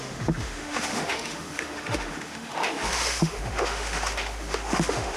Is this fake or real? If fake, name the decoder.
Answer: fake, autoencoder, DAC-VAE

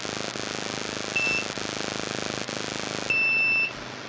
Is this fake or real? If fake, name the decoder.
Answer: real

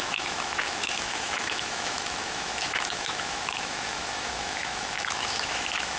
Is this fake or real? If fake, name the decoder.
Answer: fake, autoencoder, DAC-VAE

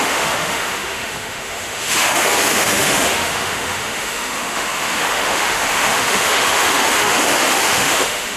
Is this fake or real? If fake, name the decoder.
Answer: fake, autoencoder, DAC-VAE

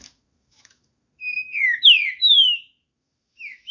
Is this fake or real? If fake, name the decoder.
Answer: fake, autoencoder, DAC-VAE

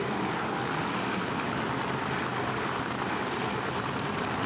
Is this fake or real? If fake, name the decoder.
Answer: real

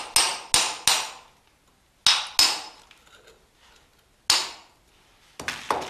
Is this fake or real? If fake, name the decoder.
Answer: real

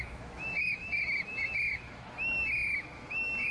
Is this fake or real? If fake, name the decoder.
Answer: fake, autoencoder, DAC-VAE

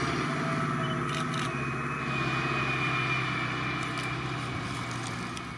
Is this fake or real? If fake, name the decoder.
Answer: real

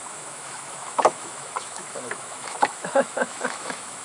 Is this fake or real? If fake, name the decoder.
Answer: fake, autoencoder, DAC-VAE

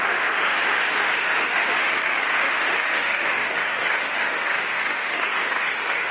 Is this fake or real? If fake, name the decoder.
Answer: fake, autoencoder, DAC-VAE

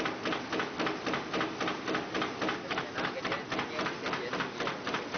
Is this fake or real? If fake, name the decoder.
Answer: real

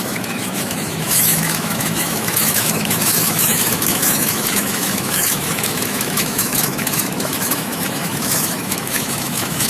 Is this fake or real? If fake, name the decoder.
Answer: fake, autoencoder, DAC-VAE